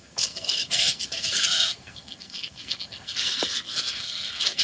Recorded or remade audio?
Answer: remade